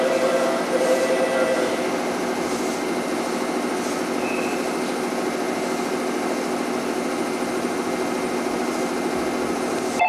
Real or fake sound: real